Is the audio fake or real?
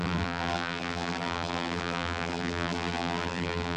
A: fake